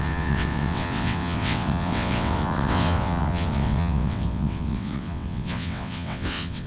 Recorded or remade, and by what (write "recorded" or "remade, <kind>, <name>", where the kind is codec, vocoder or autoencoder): remade, vocoder, WaveNeXt